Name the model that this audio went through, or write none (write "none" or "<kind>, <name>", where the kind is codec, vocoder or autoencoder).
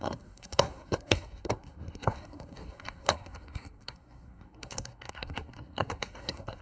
codec, SNAC